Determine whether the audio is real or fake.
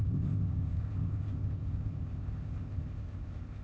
fake